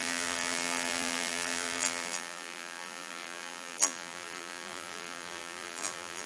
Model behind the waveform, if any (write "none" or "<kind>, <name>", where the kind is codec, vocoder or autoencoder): vocoder, BigVGAN v2